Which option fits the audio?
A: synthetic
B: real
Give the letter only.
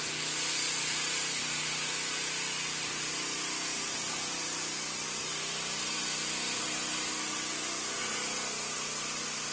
B